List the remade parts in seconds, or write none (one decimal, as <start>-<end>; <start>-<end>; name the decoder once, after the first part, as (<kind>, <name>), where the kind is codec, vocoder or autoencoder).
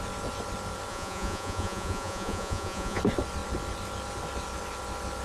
0.9-3.0 (vocoder, Vocos)